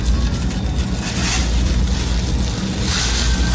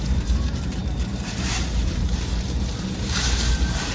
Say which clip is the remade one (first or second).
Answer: second